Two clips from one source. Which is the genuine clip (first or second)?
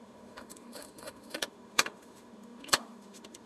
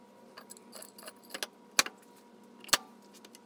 second